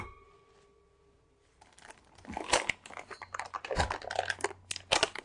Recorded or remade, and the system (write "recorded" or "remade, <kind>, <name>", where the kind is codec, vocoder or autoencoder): recorded